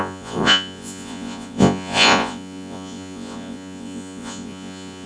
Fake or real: fake